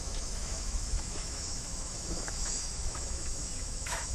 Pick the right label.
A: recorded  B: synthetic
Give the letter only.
B